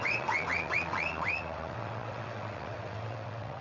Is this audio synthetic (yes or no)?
yes